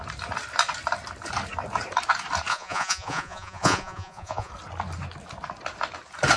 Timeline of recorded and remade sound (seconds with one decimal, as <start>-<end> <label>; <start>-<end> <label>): 0.0-2.5 recorded; 2.5-4.5 remade; 4.5-6.4 recorded